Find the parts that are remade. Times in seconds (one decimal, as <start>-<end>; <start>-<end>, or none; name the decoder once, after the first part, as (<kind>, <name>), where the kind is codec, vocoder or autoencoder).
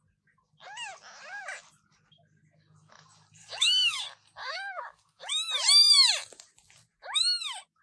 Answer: 3.4-4.0 (codec, DAC); 4.4-5.3